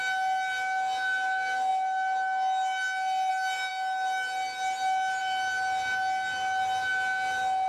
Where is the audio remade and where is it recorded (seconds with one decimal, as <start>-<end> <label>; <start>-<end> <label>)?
0.0-7.7 recorded